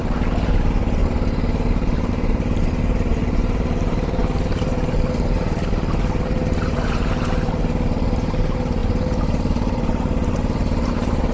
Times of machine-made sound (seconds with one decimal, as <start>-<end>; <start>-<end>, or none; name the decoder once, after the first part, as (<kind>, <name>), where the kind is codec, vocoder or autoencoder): 0.0-1.0 (vocoder, BigVGAN v2); 2.1-11.3